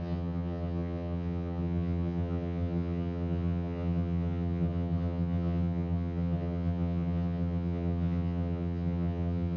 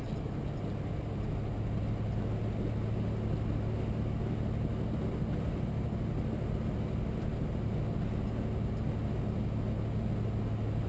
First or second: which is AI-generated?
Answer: first